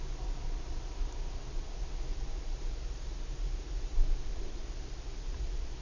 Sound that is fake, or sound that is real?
real